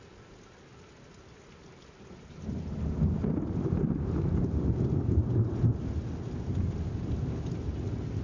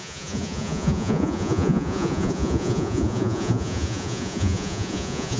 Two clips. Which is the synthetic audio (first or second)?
second